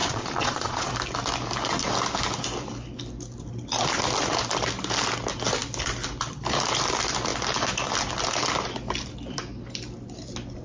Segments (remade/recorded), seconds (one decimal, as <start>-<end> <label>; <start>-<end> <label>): 0.0-0.9 remade; 0.9-10.6 recorded